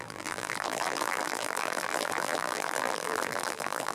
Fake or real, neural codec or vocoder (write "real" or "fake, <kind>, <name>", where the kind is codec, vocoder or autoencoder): fake, vocoder, BigVGAN v2